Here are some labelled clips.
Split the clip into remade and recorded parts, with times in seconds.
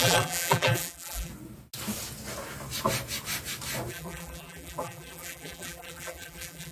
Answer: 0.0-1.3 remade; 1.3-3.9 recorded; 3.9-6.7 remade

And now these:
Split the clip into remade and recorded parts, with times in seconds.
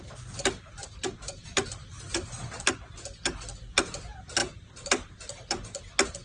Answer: 0.0-0.8 recorded; 0.8-2.0 remade; 2.0-4.4 recorded; 4.4-5.8 remade; 5.8-6.2 recorded